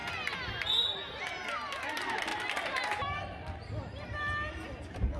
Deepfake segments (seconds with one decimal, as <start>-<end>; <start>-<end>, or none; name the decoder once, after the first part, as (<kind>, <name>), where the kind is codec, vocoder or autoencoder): none